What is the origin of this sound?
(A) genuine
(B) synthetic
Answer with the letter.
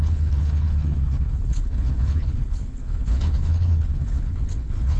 B